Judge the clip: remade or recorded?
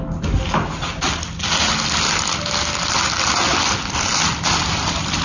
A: recorded